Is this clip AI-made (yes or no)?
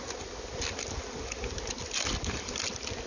no